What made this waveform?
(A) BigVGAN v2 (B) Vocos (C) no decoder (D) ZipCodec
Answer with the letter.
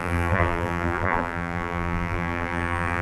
A